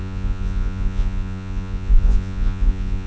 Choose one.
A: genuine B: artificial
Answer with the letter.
B